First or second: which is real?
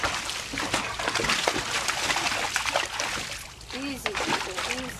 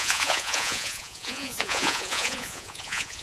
first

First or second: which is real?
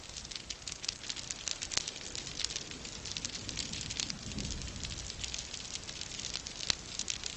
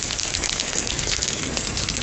first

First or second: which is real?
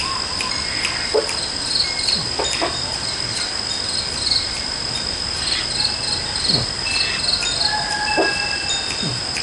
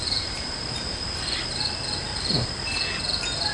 first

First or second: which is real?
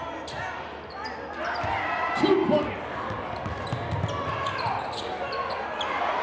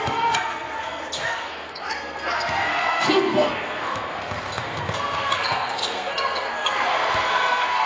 first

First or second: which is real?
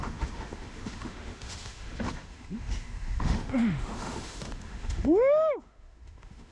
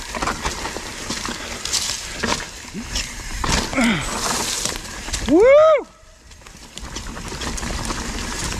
second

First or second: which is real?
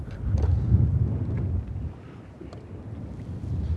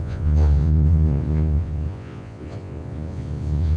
first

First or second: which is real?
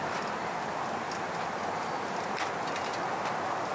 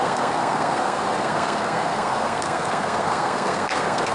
first